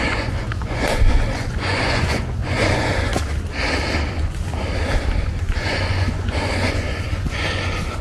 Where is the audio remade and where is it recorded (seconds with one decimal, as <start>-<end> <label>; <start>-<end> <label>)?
0.0-3.1 remade; 3.1-4.1 recorded; 4.1-4.5 remade; 4.5-5.2 recorded; 5.2-8.0 remade